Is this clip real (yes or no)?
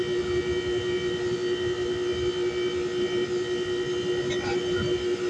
yes